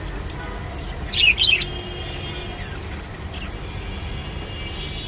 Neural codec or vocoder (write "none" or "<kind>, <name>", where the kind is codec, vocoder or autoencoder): none